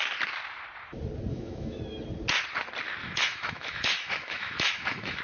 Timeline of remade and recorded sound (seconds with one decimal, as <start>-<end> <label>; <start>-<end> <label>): 0.0-1.3 recorded; 1.3-1.8 remade; 1.8-3.0 recorded; 3.0-5.2 remade